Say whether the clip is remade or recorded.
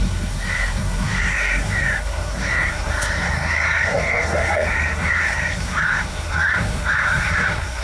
remade